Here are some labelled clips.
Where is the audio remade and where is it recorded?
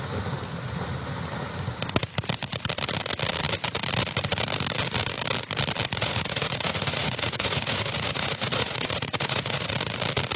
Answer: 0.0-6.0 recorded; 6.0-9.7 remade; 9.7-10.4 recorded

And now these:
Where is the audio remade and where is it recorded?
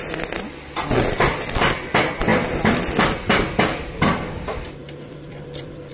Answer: 0.0-4.8 recorded; 4.8-5.9 remade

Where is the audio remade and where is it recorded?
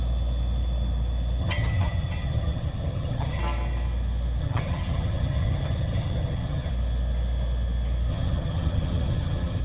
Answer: 0.0-1.4 recorded; 1.4-3.4 remade; 3.4-4.4 recorded; 4.4-6.7 remade; 6.7-8.1 recorded; 8.1-9.6 remade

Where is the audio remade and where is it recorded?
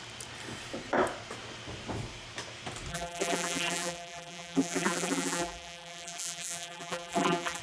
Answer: 0.0-2.9 recorded; 2.9-7.6 remade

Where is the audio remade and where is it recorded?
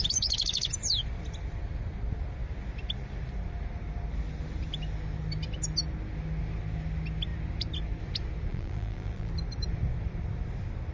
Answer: 0.0-8.5 recorded; 8.5-9.3 remade; 9.3-10.9 recorded